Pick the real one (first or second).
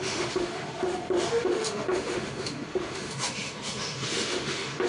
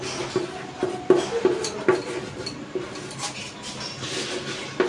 second